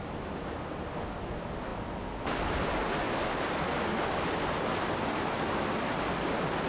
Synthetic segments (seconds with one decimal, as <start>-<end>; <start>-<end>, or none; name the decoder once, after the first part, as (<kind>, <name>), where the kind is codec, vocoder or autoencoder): none

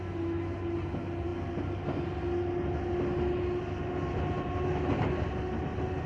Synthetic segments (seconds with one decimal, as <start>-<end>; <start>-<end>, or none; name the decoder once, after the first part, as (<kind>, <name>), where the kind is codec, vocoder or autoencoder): none